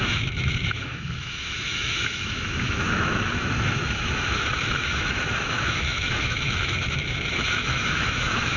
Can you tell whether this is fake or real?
fake